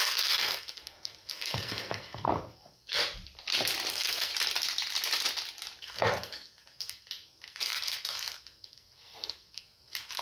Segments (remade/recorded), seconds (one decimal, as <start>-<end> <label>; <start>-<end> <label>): 0.0-3.0 remade; 3.0-3.9 recorded; 3.9-4.3 remade; 4.3-5.8 recorded; 5.8-10.2 remade

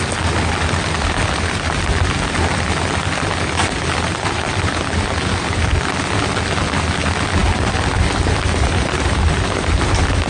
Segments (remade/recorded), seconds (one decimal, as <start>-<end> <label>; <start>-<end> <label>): 0.0-10.3 recorded

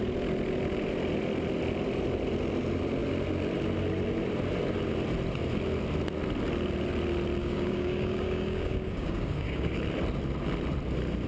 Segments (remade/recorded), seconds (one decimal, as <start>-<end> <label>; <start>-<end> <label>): 0.0-7.4 recorded; 7.4-9.7 remade; 9.7-11.3 recorded

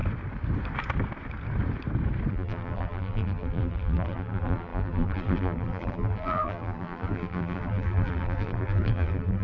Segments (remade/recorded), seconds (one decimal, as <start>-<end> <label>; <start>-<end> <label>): 0.0-2.3 recorded; 2.3-9.4 remade

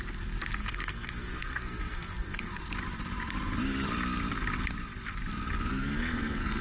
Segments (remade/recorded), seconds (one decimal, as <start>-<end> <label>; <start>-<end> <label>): 0.0-0.6 recorded; 0.6-2.6 remade; 2.6-5.7 recorded; 5.7-6.6 remade

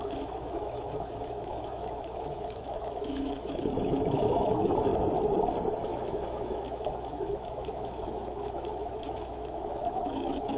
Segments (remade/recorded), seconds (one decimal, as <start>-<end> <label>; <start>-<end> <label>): 0.0-4.9 remade; 4.9-5.8 recorded; 5.8-10.6 remade

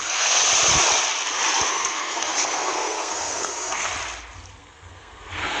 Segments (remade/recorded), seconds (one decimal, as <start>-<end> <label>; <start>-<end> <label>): 0.0-0.4 remade; 0.4-1.7 recorded; 1.7-3.9 remade; 3.9-4.6 recorded; 4.6-5.6 remade

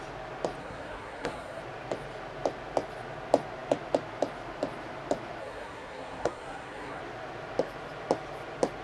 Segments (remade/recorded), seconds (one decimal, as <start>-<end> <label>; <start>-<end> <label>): 0.0-0.6 recorded; 0.6-1.6 remade; 1.6-5.4 recorded; 5.4-7.0 remade; 7.0-8.8 recorded